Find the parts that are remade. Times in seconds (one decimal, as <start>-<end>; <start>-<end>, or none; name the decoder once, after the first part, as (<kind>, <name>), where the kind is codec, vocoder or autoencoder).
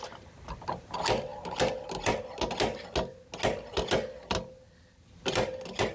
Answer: none